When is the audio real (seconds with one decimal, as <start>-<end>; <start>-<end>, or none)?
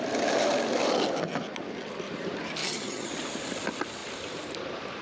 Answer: 0.0-2.6; 3.1-5.0